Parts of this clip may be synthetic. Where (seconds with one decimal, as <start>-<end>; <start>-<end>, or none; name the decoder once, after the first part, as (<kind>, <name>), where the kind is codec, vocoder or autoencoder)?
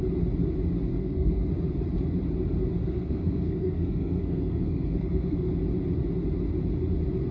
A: 1.0-1.5 (codec, SNAC); 2.8-5.5